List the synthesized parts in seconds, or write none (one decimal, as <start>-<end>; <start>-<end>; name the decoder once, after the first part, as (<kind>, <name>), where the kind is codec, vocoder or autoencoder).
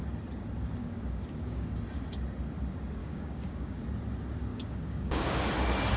0.8-1.7 (codec, DAC); 3.0-3.8; 4.5-5.5